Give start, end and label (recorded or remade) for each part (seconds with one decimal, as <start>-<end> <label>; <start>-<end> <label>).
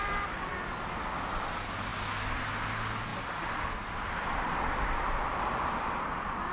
0.0-1.9 remade; 1.9-2.5 recorded; 2.5-6.5 remade